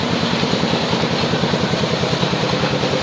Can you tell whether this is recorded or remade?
remade